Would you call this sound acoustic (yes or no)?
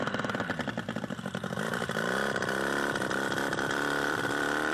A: no